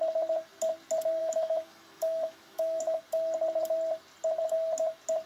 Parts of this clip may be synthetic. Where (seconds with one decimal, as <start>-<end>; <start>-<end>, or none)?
1.2-3.0